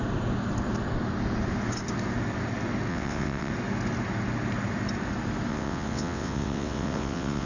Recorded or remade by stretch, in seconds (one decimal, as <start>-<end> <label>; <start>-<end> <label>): 0.0-2.9 recorded; 2.9-3.5 remade; 3.5-5.5 recorded; 5.5-7.5 remade